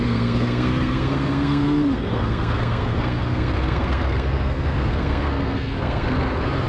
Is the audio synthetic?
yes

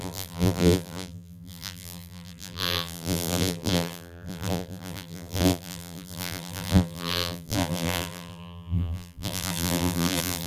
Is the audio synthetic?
yes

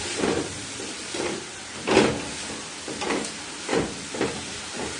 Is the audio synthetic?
no